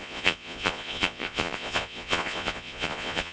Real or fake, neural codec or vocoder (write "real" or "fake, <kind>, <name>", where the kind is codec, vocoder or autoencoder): fake, vocoder, Vocos